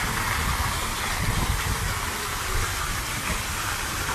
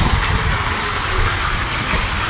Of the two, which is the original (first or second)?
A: second